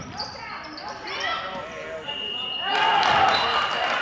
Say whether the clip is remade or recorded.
recorded